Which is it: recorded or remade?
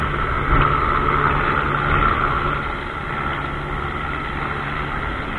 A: recorded